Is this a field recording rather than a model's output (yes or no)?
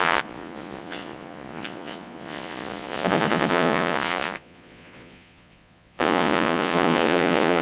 no